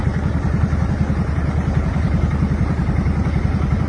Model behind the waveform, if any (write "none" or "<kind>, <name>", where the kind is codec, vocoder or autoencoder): none